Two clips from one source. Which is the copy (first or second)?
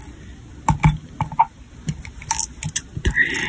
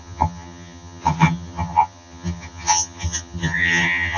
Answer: second